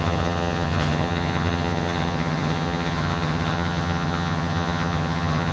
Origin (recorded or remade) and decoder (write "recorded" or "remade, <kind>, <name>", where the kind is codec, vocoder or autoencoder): remade, vocoder, HiFi-GAN